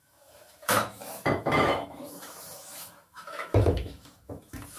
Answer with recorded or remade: remade